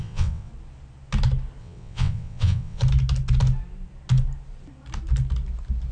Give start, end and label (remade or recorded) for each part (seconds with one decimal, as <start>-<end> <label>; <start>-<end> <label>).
0.0-0.5 remade; 0.5-1.6 recorded; 1.6-2.8 remade; 2.8-5.9 recorded